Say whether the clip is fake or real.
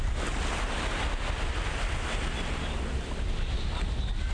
real